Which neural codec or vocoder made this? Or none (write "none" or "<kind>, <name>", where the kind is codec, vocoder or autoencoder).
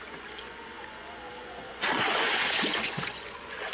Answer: vocoder, Vocos